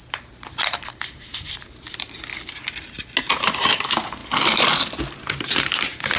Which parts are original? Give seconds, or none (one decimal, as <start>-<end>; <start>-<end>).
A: 2.3-3.2; 4.2-5.0